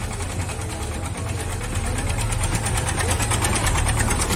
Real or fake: real